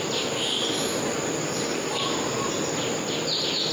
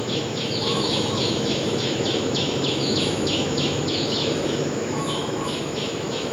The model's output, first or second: second